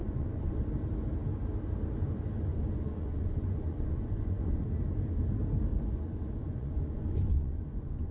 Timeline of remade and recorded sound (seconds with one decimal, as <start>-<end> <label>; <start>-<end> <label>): 0.0-0.7 remade; 0.7-2.5 recorded; 2.5-4.7 remade; 4.7-5.7 recorded; 5.7-8.1 remade